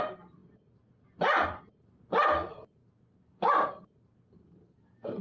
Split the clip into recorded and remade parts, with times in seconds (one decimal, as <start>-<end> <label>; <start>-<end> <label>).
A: 0.0-5.2 recorded